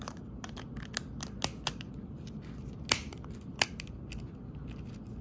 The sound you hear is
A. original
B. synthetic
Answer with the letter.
A